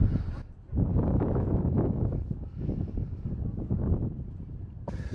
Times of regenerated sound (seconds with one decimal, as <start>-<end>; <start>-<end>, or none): 0.9-4.0